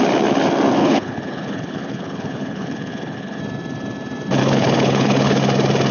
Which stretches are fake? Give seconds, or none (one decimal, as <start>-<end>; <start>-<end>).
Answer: 0.8-3.4; 4.4-5.4